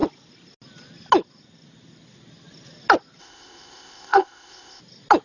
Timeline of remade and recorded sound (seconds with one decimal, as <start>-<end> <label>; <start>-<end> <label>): 0.0-3.2 recorded; 3.2-4.8 remade; 4.8-5.2 recorded